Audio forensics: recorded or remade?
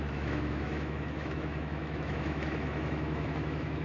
remade